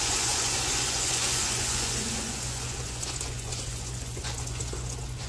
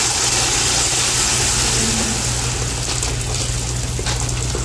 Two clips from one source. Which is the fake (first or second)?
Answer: first